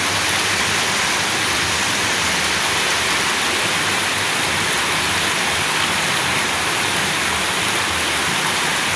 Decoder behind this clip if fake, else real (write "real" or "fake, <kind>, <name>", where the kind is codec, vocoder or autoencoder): real